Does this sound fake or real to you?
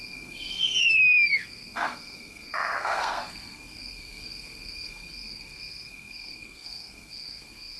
fake